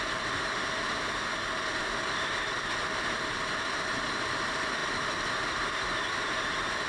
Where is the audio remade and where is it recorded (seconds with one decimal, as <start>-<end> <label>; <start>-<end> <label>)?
0.0-6.9 recorded